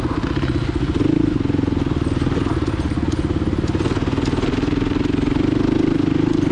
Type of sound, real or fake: real